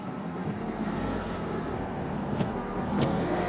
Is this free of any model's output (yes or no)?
no